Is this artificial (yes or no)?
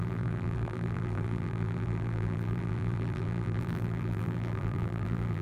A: yes